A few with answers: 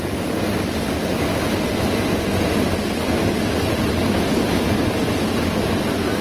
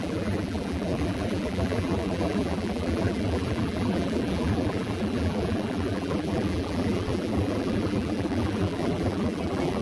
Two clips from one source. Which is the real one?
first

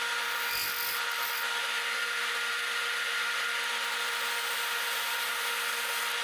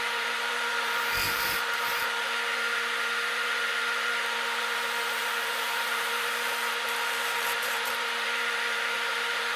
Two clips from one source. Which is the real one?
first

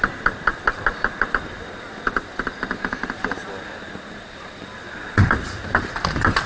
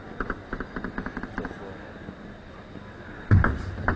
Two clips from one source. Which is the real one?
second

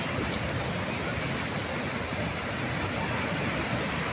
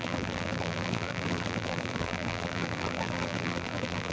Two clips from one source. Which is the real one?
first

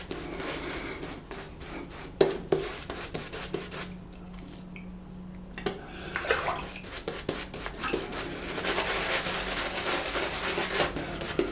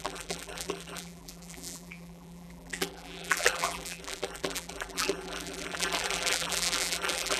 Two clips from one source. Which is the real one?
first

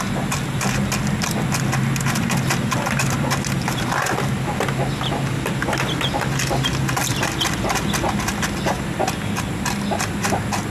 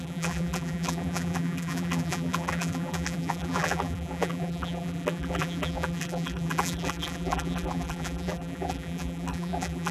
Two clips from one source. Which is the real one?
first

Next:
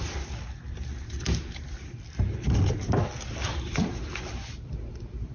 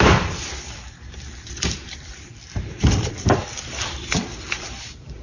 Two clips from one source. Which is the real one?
first